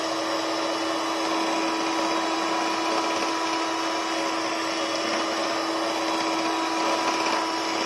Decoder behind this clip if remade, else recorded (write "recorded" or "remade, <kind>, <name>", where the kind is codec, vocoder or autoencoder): recorded